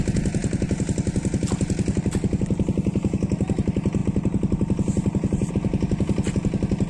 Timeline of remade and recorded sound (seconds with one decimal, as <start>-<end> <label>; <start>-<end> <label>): 0.0-6.9 recorded

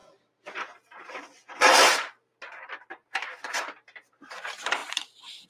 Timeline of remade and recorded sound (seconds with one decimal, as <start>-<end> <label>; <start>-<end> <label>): 0.0-1.1 recorded; 1.1-2.3 remade; 2.3-2.8 recorded; 2.8-5.5 remade

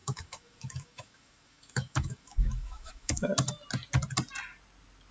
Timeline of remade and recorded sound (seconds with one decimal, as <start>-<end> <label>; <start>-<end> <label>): 0.0-3.3 remade; 3.3-5.1 recorded

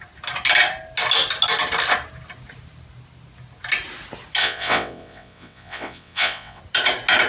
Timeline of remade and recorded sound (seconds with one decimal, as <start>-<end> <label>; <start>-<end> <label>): 0.0-4.4 recorded; 4.4-6.6 remade; 6.6-7.3 recorded

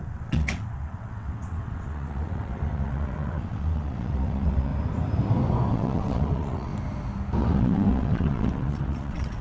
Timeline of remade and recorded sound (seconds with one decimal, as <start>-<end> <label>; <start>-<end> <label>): 0.0-4.7 remade; 4.7-5.7 recorded; 5.7-6.7 remade; 6.7-7.4 recorded; 7.4-9.4 remade

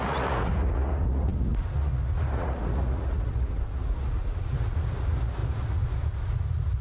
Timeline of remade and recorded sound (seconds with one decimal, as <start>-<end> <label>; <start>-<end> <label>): 0.0-6.8 remade

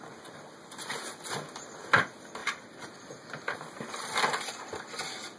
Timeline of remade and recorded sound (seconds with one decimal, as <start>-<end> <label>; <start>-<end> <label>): 0.0-2.4 recorded; 2.4-3.9 remade; 3.9-5.4 recorded

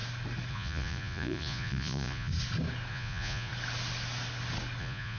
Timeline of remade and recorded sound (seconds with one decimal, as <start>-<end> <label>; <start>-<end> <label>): 0.0-0.5 recorded; 0.5-2.3 remade; 2.3-2.9 recorded; 2.9-3.5 remade; 3.5-4.8 recorded; 4.8-5.2 remade